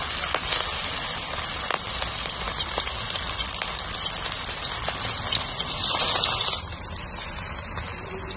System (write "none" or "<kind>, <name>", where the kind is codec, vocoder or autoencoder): none